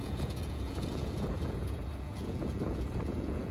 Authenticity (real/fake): fake